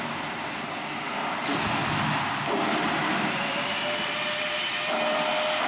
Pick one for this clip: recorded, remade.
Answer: recorded